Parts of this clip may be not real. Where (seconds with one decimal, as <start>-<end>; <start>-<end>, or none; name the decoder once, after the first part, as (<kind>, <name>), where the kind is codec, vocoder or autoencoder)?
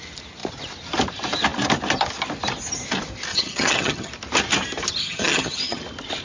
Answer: 3.3-4.1 (vocoder, HiFi-GAN); 5.0-5.8